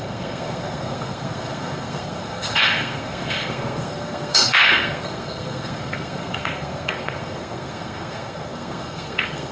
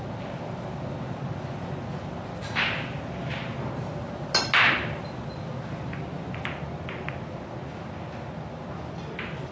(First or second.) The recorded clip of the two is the second